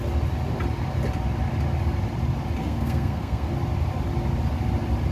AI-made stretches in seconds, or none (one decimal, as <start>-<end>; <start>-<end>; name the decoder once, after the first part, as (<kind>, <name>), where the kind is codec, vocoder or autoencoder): 2.6-3.5 (codec, SNAC)